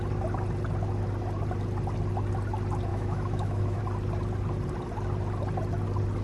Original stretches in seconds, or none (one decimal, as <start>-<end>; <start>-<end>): 0.0-2.9; 3.8-6.2